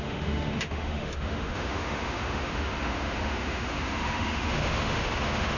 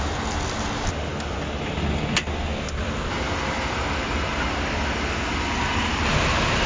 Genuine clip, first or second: second